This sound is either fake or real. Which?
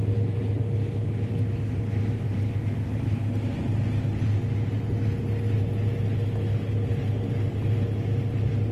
real